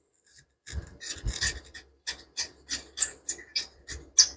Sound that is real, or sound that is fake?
real